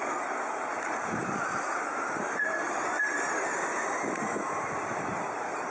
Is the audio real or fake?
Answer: real